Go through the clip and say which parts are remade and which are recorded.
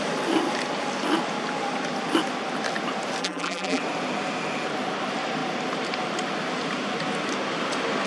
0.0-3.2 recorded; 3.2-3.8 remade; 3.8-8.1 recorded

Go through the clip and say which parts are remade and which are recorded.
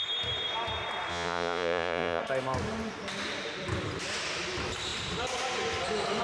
0.0-1.1 recorded; 1.1-2.2 remade; 2.2-6.2 recorded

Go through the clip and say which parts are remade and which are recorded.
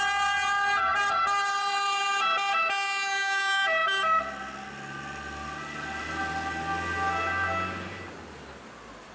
0.0-0.9 recorded; 0.9-2.0 remade; 2.0-9.1 recorded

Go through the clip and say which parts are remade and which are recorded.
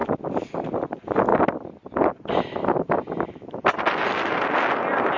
0.0-5.2 recorded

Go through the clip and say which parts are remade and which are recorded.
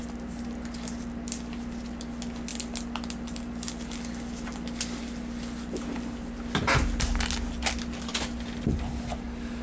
0.0-9.6 recorded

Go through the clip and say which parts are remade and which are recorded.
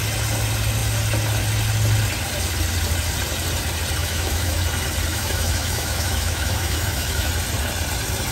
0.0-4.0 recorded; 4.0-4.6 remade; 4.6-5.1 recorded; 5.1-7.3 remade; 7.3-8.3 recorded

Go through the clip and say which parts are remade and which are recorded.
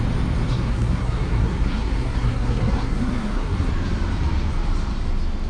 0.0-0.5 recorded; 0.5-3.7 remade; 3.7-5.5 recorded